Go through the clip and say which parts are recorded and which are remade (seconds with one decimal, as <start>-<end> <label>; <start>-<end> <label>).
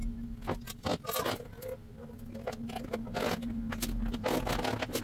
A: 0.0-5.0 recorded